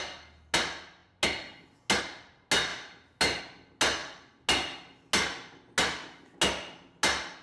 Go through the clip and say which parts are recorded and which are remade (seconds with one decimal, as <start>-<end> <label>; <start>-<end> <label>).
0.0-7.4 recorded